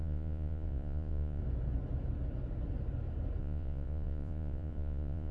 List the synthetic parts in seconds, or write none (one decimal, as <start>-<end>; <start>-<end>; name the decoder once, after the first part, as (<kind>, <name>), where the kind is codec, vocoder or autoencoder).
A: 0.0-1.4 (vocoder, Vocos); 3.4-5.3

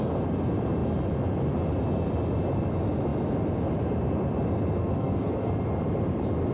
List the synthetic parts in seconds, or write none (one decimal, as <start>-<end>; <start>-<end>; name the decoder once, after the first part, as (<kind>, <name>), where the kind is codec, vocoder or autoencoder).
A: 4.8-5.5 (codec, SNAC)

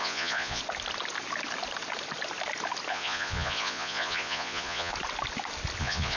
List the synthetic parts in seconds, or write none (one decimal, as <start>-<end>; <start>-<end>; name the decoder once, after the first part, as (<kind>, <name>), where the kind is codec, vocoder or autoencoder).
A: 0.0-0.6 (vocoder, Vocos); 2.9-4.9; 5.8-6.2

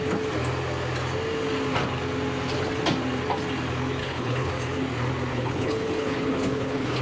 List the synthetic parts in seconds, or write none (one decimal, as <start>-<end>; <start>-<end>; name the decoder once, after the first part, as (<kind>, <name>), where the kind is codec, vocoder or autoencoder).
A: 4.0-4.5 (codec, HILCodec); 5.3-7.0

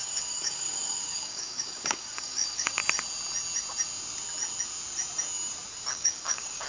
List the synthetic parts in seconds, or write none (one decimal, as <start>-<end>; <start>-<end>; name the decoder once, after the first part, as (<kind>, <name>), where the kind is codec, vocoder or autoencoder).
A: 0.0-2.8 (codec, DAC); 5.9-6.7

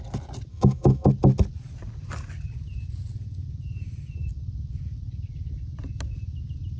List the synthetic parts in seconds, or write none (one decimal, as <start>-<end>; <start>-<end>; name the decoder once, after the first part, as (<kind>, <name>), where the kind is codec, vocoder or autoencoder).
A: 0.5-1.1 (autoencoder, DAC-VAE)